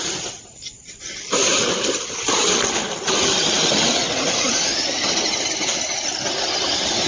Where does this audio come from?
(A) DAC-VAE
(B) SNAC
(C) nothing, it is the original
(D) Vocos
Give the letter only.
C